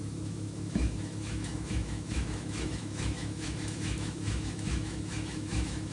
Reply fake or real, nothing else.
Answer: fake